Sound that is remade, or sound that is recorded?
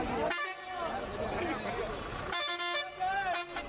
recorded